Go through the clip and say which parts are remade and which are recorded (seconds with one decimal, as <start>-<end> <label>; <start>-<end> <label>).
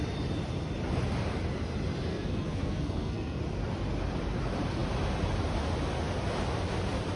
0.0-2.1 recorded; 2.1-3.4 remade; 3.4-7.2 recorded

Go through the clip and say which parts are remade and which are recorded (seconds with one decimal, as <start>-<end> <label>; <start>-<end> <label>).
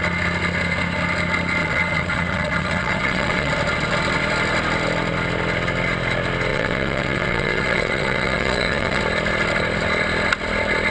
0.0-1.6 recorded; 1.6-3.5 remade; 3.5-6.5 recorded; 6.5-9.0 remade; 9.0-10.9 recorded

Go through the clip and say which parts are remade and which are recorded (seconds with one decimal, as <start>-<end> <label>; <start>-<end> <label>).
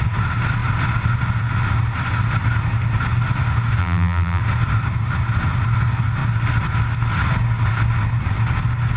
0.0-3.8 recorded; 3.8-4.4 remade; 4.4-9.0 recorded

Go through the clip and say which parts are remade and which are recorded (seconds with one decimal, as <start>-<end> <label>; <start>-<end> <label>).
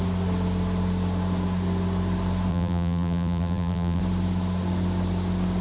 0.0-2.5 recorded; 2.5-4.0 remade; 4.0-5.6 recorded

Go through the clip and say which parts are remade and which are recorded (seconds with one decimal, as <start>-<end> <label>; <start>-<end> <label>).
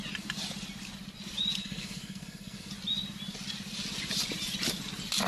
0.0-1.6 recorded; 1.6-2.7 remade; 2.7-5.3 recorded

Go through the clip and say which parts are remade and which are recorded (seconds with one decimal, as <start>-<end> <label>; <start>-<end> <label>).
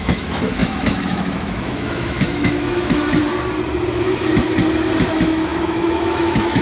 0.0-3.2 remade; 3.2-3.9 recorded; 3.9-4.3 remade; 4.3-5.1 recorded; 5.1-6.6 remade